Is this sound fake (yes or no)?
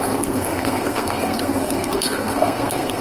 yes